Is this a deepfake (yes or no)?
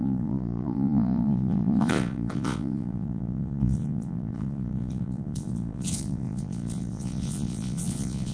yes